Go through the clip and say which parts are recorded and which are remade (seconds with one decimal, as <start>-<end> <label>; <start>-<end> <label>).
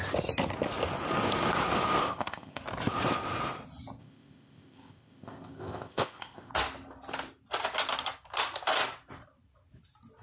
0.0-2.0 recorded; 2.0-2.6 remade; 2.6-4.0 recorded; 4.0-6.5 remade; 6.5-10.2 recorded